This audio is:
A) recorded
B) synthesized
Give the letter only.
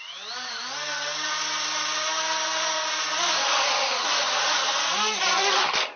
A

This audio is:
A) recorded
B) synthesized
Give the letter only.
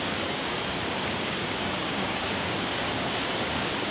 B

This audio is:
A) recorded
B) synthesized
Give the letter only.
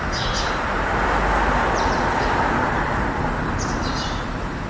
A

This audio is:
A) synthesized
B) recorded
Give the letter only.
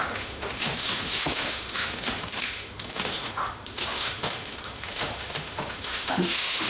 A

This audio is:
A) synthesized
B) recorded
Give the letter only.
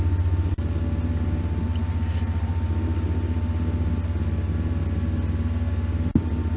B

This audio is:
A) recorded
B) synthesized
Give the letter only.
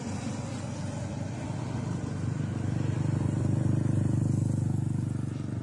A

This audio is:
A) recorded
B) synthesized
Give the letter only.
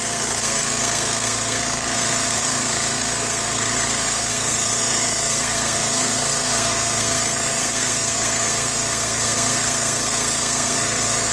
B